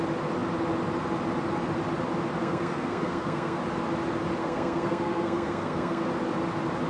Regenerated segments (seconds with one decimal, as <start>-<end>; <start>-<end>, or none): 2.4-3.6; 4.4-6.1